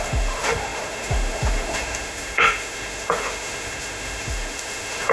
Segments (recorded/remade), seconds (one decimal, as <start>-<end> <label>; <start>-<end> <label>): 0.0-5.1 remade